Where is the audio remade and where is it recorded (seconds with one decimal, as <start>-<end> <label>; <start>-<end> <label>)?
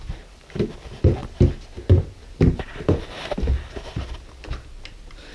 0.0-5.3 recorded